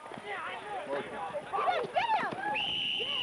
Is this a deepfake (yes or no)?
yes